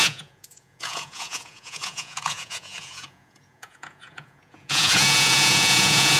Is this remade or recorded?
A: remade